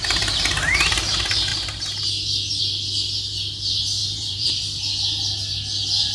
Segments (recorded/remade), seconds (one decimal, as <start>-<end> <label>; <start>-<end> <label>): 0.0-4.0 recorded; 4.0-4.5 remade; 4.5-6.1 recorded